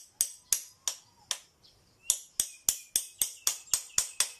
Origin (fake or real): real